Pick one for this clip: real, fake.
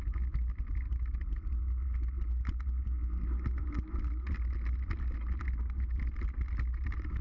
real